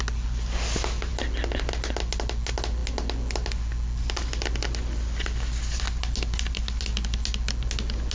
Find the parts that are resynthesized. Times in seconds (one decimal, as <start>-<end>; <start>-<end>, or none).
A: none